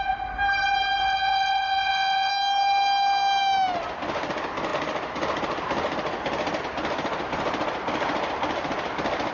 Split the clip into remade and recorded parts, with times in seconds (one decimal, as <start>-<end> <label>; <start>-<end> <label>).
0.0-1.0 recorded; 1.0-2.3 remade; 2.3-9.3 recorded